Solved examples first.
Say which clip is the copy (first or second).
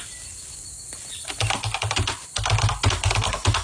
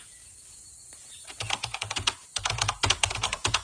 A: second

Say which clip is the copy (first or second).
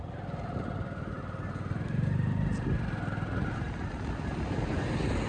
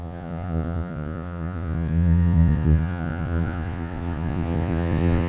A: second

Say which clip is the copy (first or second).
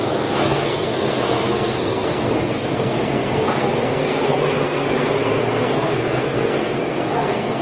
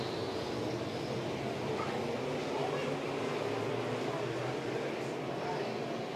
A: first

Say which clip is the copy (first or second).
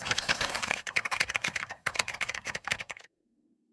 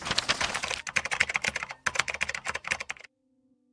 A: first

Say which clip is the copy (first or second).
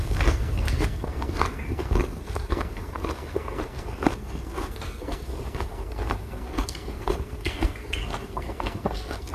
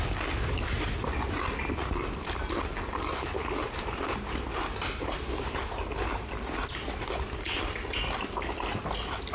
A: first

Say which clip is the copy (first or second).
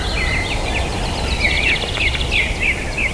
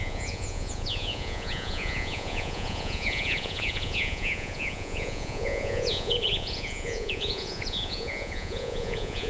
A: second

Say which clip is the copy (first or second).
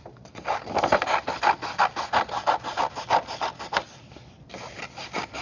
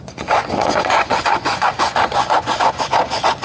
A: second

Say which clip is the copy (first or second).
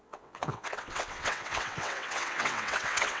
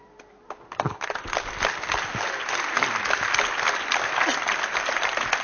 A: first